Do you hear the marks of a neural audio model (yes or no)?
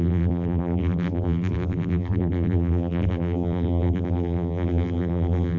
yes